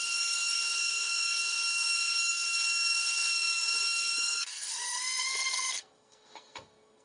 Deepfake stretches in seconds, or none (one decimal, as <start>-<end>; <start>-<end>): 0.0-7.0